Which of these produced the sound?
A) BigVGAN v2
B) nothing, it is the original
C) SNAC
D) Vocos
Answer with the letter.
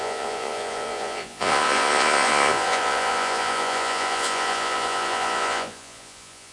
D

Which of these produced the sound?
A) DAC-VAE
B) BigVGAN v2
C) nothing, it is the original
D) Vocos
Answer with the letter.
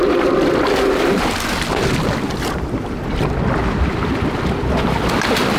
C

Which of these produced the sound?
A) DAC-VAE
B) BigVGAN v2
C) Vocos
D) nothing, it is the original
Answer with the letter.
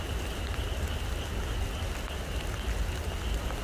D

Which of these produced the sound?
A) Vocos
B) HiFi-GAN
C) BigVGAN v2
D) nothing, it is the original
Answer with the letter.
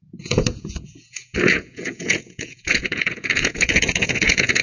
A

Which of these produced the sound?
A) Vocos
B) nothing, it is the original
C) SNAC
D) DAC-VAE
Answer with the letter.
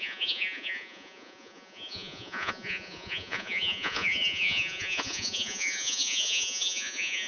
A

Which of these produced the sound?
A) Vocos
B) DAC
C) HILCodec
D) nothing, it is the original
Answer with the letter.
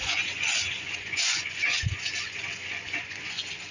A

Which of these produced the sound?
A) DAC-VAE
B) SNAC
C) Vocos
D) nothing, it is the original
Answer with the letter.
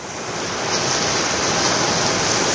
D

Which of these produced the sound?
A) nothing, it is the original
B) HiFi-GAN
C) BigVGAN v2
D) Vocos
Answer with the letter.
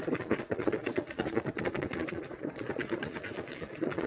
D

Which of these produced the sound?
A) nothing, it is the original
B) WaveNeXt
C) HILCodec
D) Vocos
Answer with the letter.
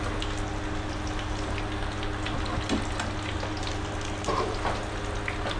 A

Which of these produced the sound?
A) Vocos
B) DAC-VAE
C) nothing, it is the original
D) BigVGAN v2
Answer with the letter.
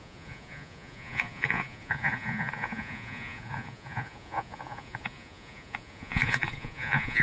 A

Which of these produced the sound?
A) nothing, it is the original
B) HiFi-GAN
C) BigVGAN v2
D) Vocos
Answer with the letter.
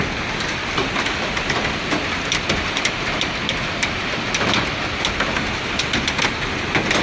A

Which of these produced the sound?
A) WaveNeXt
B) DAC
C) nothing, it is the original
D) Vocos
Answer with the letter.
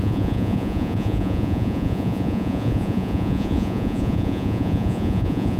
D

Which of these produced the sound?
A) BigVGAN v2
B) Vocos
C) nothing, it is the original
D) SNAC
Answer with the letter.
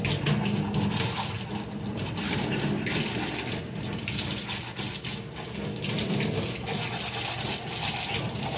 C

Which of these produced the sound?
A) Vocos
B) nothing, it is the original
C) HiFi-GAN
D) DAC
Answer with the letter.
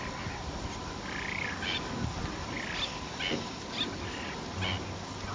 B